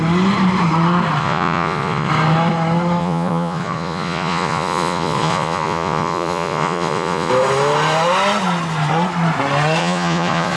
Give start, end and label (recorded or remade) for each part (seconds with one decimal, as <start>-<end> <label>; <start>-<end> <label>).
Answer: 0.0-1.2 recorded; 1.2-2.1 remade; 2.1-3.0 recorded; 3.0-7.3 remade; 7.3-9.8 recorded; 9.8-10.6 remade